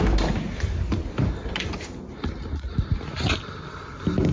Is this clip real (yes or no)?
yes